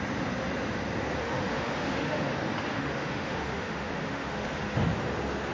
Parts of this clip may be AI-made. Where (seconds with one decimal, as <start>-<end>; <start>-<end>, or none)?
1.2-2.3; 2.7-4.9